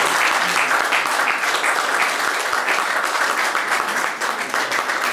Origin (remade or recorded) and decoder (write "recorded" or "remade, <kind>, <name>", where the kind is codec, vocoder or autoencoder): recorded